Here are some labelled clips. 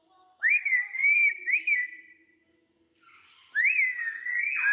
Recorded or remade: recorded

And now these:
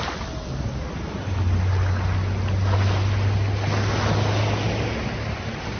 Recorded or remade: recorded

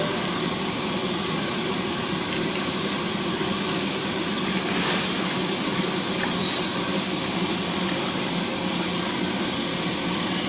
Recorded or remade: recorded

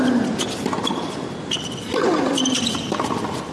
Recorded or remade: recorded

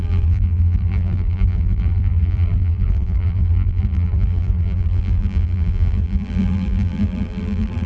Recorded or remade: remade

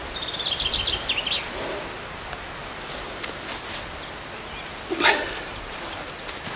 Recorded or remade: recorded